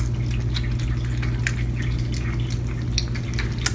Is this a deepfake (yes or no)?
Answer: no